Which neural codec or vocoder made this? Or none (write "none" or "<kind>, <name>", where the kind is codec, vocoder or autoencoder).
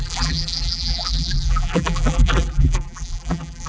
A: vocoder, BigVGAN v2